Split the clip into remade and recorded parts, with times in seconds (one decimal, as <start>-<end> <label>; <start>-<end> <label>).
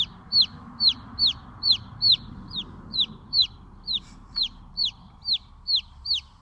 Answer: 0.0-1.4 recorded; 1.4-5.2 remade; 5.2-6.4 recorded